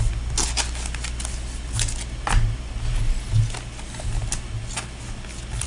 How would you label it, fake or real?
real